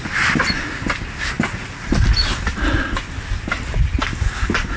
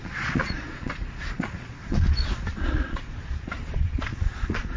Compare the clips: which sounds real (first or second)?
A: first